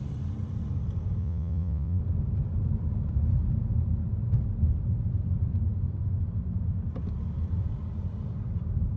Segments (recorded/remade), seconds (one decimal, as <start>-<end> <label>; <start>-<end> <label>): 0.0-1.2 recorded; 1.2-2.0 remade; 2.0-9.0 recorded